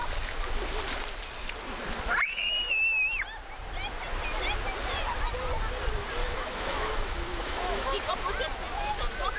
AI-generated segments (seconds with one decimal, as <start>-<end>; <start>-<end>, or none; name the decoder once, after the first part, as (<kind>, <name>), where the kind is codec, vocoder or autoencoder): 6.2-8.1 (autoencoder, DAC-VAE)